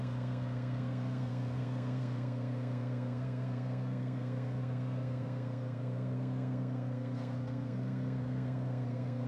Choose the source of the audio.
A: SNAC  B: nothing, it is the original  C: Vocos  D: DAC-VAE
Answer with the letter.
A